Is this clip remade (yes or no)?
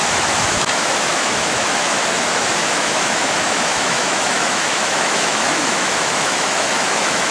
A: yes